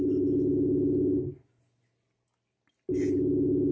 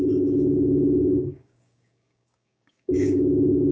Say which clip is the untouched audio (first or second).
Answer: first